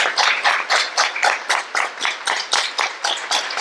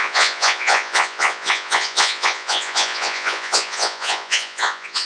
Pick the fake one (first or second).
second